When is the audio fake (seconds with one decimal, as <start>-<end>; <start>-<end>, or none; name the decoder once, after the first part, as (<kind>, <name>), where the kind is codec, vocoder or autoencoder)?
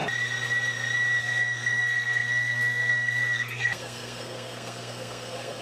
1.2-5.6 (codec, SNAC)